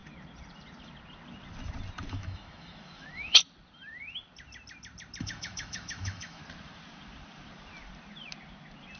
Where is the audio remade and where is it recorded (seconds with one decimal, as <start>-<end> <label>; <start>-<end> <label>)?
0.0-2.1 recorded; 2.1-3.4 remade; 3.4-5.2 recorded; 5.2-6.4 remade; 6.4-9.0 recorded